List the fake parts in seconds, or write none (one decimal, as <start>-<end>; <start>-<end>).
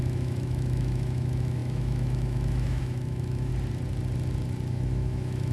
0.0-3.5; 4.7-5.5